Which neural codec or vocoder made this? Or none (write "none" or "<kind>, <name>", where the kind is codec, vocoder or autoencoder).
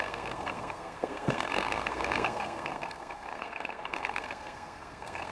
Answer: codec, SNAC